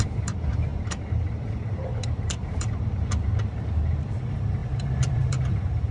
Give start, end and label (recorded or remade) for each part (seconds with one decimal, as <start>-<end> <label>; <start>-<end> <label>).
0.0-5.9 remade

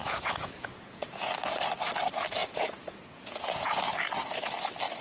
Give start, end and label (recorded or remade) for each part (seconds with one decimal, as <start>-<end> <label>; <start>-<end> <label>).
0.0-1.3 remade; 1.3-2.4 recorded; 2.4-3.8 remade; 3.8-5.0 recorded

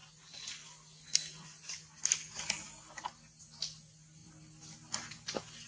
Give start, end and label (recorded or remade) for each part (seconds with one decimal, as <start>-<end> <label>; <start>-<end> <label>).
0.0-5.7 recorded

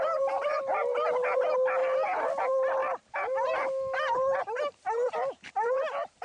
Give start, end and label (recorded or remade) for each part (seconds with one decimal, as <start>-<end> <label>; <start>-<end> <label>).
0.0-6.2 recorded

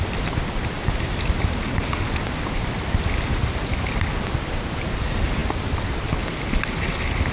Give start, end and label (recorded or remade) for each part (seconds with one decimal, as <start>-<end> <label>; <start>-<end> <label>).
0.0-7.3 recorded